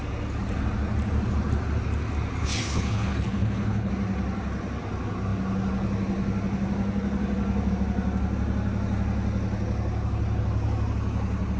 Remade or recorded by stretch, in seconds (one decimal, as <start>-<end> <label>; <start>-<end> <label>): 0.0-2.4 recorded; 2.4-3.9 remade; 3.9-11.6 recorded